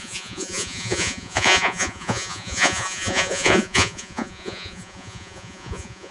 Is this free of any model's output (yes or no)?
no